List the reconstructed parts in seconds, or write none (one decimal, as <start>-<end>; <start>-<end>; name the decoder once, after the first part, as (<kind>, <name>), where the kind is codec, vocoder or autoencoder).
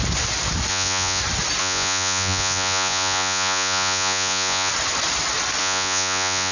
0.7-1.2 (vocoder, Vocos); 1.6-4.7; 5.6-6.5